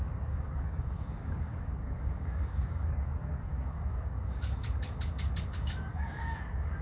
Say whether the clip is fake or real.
fake